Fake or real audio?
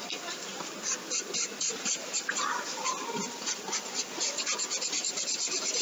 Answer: real